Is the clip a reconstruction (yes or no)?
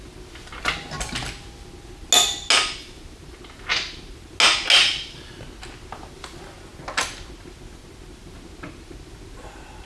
no